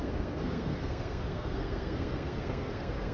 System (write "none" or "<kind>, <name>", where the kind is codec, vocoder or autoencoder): codec, SNAC